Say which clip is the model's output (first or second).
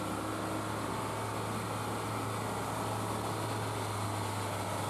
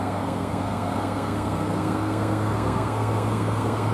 second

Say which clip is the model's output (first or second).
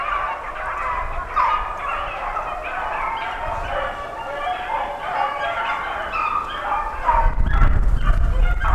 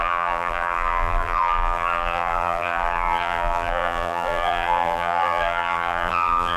second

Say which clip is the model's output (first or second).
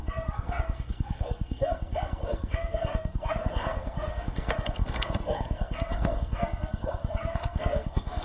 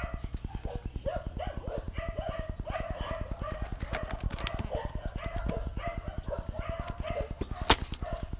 first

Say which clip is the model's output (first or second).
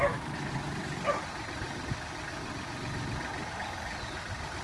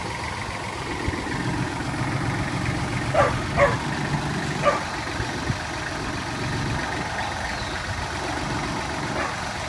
first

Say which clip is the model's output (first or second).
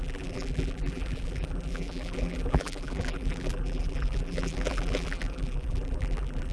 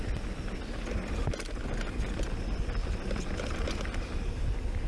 first